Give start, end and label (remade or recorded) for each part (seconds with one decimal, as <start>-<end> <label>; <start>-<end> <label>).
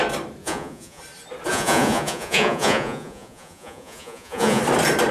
0.0-0.4 recorded; 0.4-1.0 remade; 1.0-1.5 recorded; 1.5-4.6 remade; 4.6-5.1 recorded